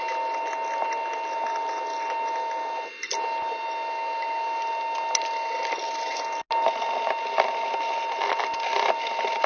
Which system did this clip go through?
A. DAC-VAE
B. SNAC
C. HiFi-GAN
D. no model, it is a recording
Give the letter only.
D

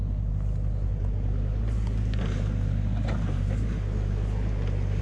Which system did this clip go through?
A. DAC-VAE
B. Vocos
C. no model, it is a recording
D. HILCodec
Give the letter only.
C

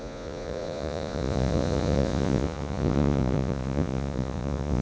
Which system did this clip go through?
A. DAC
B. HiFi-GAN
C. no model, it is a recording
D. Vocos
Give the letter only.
D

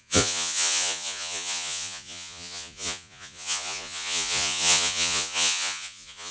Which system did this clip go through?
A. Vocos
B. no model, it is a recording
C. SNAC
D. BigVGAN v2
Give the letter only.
A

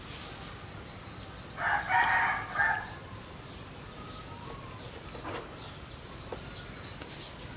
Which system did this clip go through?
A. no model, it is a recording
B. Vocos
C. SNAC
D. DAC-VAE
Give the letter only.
A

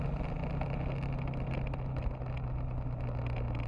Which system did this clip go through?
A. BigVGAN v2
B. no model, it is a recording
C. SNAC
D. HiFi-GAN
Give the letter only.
B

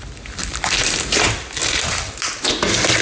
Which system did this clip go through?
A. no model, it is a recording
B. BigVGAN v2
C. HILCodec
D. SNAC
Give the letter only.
A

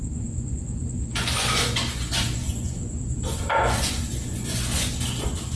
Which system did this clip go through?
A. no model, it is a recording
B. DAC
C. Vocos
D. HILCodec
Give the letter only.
C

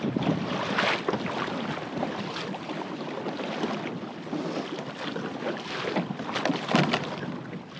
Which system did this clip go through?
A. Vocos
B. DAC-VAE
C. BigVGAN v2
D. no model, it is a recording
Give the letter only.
D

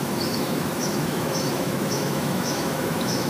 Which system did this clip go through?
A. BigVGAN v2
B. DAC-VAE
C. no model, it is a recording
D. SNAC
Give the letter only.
B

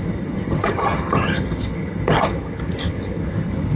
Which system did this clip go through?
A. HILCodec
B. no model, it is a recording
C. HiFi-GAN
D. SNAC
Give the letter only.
C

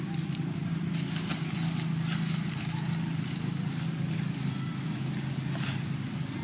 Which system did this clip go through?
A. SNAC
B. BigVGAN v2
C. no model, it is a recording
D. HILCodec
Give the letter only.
C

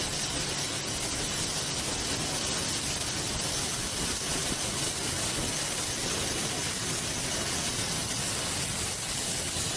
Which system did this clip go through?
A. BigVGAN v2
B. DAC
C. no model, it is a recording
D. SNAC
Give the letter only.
C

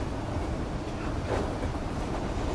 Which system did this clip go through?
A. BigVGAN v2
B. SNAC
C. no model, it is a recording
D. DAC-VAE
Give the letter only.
A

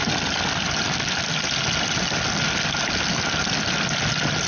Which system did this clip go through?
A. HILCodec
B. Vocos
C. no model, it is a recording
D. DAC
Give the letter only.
C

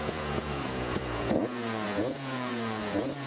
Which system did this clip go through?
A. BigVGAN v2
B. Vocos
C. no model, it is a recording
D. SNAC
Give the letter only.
B